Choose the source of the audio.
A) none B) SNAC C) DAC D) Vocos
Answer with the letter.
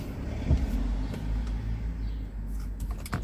A